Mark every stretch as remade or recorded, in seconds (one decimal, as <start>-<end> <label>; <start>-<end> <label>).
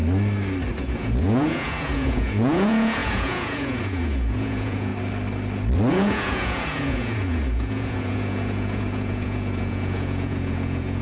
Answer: 0.0-0.8 recorded; 0.8-4.9 remade; 4.9-5.9 recorded; 5.9-11.0 remade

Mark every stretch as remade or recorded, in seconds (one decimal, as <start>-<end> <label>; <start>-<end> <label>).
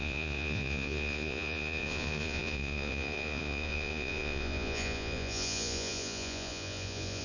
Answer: 0.0-7.2 remade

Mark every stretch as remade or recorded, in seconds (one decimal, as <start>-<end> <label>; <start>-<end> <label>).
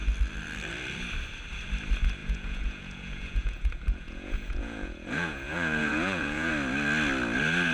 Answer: 0.0-2.2 recorded; 2.2-6.5 remade; 6.5-7.7 recorded